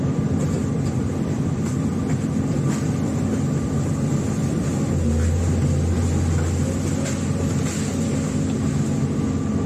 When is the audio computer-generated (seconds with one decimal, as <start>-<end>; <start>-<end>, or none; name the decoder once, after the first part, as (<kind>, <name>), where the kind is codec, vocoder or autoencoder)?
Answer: 0.6-3.1 (vocoder, BigVGAN v2)